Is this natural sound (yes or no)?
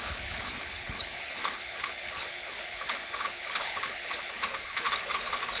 no